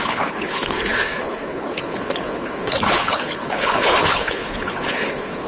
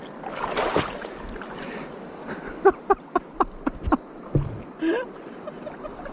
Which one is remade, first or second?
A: first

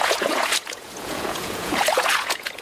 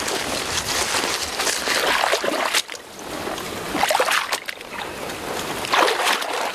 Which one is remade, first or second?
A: first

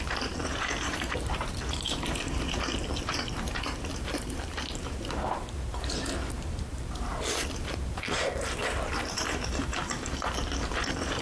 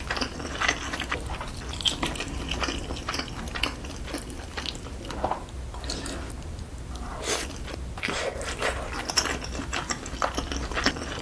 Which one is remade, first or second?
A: first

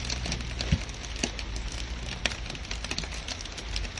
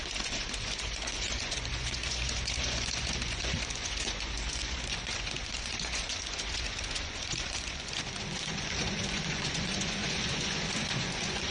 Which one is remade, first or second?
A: second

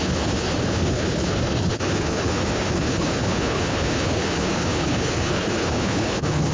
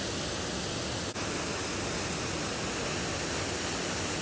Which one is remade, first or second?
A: first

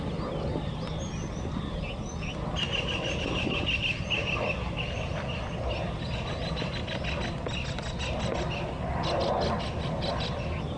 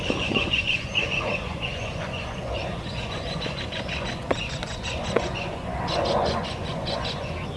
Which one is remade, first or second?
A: second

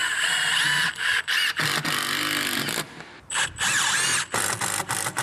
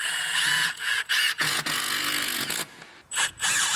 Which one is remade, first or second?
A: second